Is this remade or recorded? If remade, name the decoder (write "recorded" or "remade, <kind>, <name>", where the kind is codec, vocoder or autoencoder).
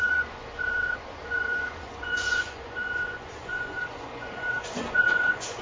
remade, vocoder, Vocos